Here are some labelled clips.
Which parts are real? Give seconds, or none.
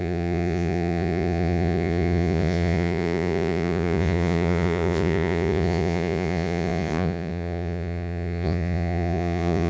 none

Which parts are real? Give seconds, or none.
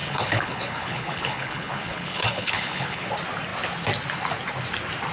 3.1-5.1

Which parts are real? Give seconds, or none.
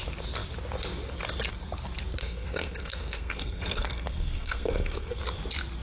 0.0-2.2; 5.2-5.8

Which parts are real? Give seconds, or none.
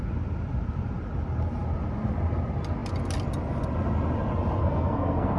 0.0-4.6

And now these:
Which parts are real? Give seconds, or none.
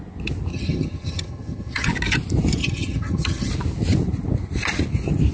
0.0-0.5; 1.9-2.6; 3.5-5.3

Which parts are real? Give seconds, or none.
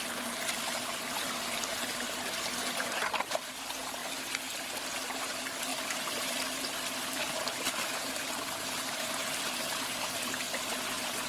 0.0-5.7; 10.7-11.3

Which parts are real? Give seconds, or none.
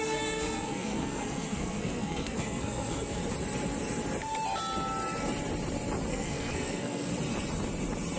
3.2-6.1; 7.1-8.2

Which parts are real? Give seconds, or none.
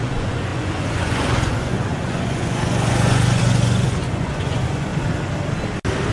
4.9-6.1